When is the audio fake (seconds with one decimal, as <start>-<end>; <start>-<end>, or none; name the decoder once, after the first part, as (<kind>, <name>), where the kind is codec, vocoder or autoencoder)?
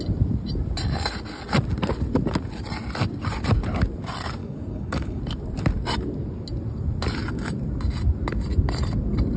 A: 4.4-5.2 (codec, DAC)